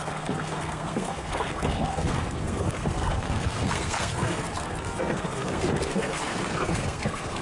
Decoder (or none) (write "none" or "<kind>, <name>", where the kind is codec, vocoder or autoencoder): codec, SNAC